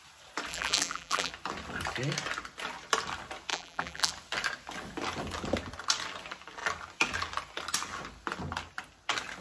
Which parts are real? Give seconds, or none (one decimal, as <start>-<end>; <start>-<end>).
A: 0.0-0.5; 1.3-3.5; 4.1-9.4